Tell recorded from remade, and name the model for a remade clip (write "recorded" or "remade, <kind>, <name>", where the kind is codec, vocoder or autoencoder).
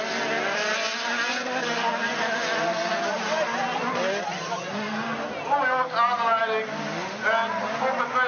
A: recorded